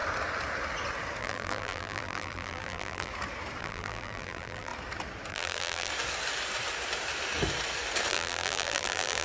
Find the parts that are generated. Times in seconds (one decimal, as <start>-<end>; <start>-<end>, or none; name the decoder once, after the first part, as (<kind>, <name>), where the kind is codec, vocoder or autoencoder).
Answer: 1.2-3.1 (vocoder, BigVGAN v2); 3.6-4.7; 5.3-5.9; 8.1-9.2